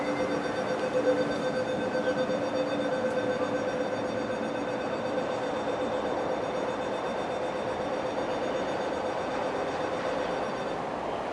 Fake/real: real